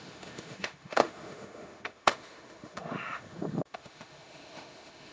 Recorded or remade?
remade